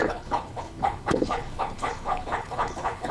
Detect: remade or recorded remade